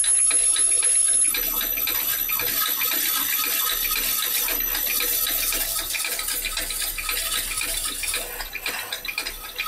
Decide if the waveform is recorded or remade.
recorded